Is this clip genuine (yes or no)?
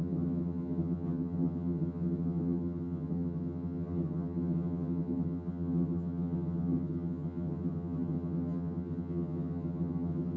no